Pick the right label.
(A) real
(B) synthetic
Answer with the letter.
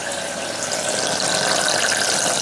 A